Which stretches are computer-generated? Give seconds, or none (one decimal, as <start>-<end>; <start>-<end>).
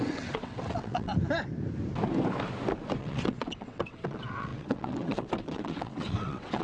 0.0-1.1; 3.0-6.6